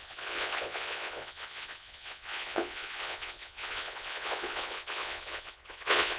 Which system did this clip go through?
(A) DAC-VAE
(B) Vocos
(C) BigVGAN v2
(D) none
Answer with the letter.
B